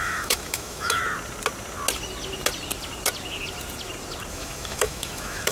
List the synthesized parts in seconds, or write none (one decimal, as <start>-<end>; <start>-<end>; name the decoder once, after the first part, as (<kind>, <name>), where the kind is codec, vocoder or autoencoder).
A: 0.0-1.0 (autoencoder, DAC-VAE); 4.3-5.5

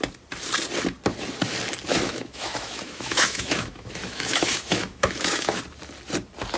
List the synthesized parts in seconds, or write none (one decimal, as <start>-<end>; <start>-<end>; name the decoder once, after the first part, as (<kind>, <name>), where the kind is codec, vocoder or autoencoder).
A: 1.9-5.6 (autoencoder, DAC-VAE)

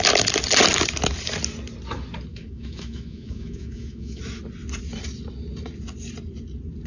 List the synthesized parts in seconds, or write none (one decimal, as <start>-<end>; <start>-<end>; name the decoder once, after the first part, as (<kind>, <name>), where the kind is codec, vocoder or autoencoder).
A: 2.3-4.2 (autoencoder, DAC-VAE)

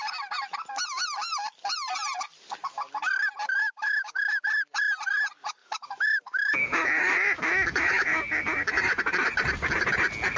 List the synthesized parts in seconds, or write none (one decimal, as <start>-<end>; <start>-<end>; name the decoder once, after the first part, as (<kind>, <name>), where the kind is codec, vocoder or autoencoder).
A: 3.6-4.4 (autoencoder, DAC-VAE); 5.6-9.0